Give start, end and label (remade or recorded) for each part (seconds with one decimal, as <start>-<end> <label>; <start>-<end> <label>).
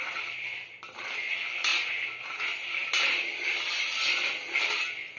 0.0-1.7 remade; 1.7-2.4 recorded; 2.4-2.8 remade; 2.8-3.7 recorded; 3.7-5.2 remade